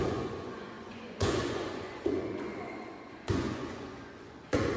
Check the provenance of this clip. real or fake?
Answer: fake